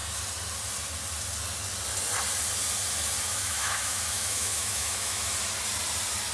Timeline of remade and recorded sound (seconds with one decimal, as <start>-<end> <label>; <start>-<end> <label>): 0.0-3.3 recorded; 3.3-5.3 remade; 5.3-6.3 recorded